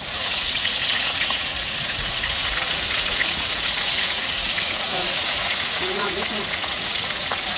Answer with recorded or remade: remade